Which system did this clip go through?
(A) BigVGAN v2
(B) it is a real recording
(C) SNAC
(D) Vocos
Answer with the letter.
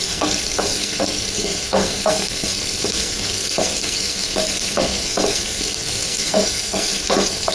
C